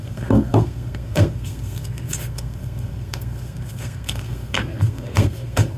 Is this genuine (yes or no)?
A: no